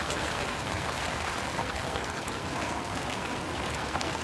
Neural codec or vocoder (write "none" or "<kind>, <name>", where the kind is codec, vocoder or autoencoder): codec, SNAC